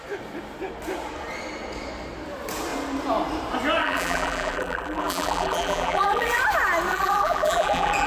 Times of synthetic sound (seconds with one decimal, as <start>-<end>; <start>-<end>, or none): 3.8-6.4; 6.9-8.1

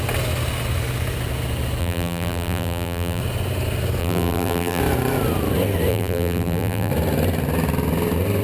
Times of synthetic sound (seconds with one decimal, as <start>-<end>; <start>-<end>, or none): 1.8-3.2; 4.0-4.8; 5.9-6.9

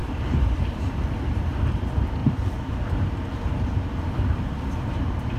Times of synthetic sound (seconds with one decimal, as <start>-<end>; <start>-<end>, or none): 0.0-1.6